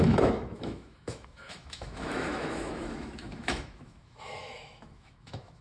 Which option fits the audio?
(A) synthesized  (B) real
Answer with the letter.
A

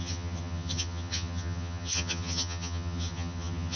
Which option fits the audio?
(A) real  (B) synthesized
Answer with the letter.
B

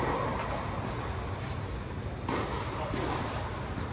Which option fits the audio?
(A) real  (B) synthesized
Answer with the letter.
A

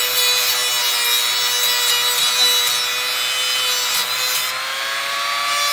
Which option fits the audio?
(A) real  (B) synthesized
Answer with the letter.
A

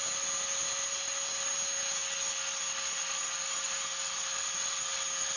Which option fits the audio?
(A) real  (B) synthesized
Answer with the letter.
A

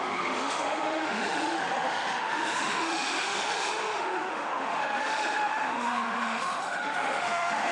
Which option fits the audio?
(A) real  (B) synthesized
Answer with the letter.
B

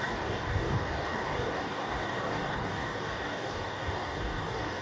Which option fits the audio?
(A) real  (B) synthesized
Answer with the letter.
B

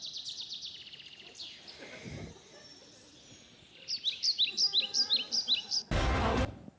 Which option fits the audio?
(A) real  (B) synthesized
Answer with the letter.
A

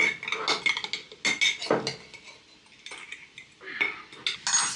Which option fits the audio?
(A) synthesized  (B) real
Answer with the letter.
B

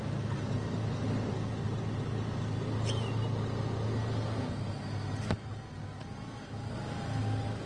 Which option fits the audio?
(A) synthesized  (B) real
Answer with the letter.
B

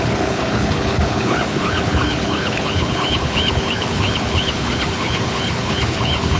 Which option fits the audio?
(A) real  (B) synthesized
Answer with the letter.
B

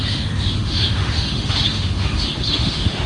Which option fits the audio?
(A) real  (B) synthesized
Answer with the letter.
B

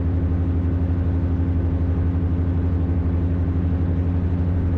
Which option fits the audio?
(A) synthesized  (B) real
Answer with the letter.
B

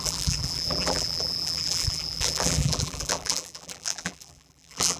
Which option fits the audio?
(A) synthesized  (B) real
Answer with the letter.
A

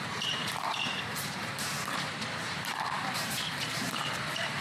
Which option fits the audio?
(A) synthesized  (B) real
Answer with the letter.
A